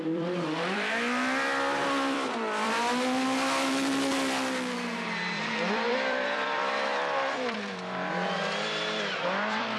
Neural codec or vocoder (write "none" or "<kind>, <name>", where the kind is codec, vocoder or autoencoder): vocoder, BigVGAN v2